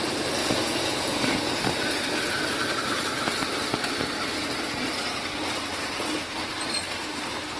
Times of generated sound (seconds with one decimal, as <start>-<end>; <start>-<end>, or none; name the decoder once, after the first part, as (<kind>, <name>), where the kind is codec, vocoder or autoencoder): 0.4-1.2 (vocoder, Vocos)